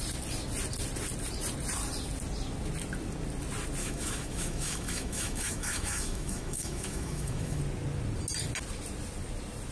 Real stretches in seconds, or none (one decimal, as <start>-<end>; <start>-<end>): 0.0-3.8; 7.6-9.7